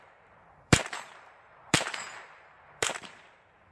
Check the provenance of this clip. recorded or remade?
remade